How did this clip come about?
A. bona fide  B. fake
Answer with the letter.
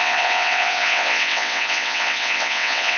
B